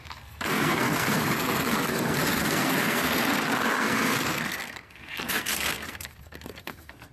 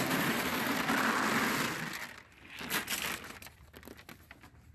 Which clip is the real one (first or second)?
second